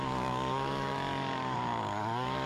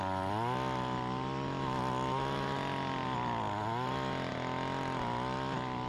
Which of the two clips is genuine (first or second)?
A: second